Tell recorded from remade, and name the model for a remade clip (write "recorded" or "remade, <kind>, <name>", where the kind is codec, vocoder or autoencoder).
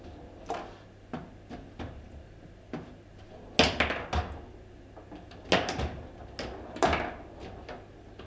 recorded